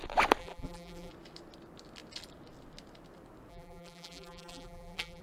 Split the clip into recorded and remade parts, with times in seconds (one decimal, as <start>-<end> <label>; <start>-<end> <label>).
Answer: 0.0-0.4 recorded; 0.4-1.1 remade; 1.1-3.5 recorded; 3.5-5.2 remade